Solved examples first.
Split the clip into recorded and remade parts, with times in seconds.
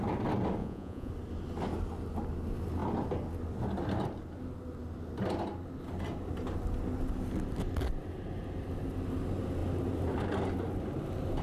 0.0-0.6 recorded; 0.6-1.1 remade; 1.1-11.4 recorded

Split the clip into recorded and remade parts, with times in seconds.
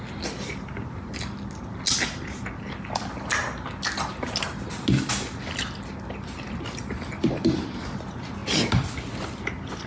0.0-9.9 recorded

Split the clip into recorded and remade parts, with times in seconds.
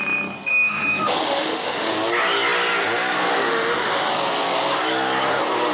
0.0-0.5 recorded; 0.5-1.9 remade; 1.9-3.5 recorded; 3.5-4.1 remade; 4.1-5.7 recorded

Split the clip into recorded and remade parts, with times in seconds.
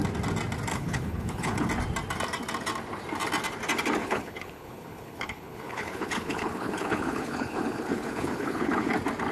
0.0-0.7 recorded; 0.7-1.7 remade; 1.7-4.0 recorded; 4.0-8.9 remade; 8.9-9.3 recorded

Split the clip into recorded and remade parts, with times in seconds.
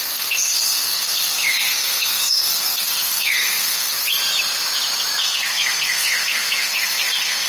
0.0-4.2 remade; 4.2-5.2 recorded; 5.2-7.5 remade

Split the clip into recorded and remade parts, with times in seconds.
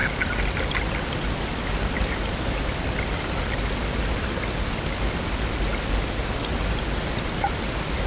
0.0-8.1 recorded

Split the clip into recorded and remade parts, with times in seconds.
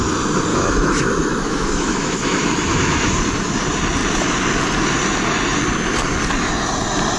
0.0-0.5 recorded; 0.5-3.1 remade; 3.1-7.2 recorded